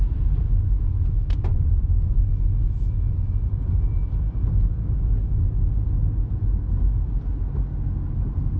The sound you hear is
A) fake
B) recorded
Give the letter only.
B